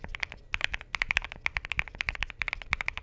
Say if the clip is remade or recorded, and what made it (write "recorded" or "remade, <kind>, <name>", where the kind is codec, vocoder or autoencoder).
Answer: remade, vocoder, BigVGAN v2